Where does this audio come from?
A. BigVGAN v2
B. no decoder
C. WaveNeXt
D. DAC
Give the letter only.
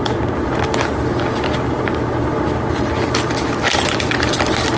B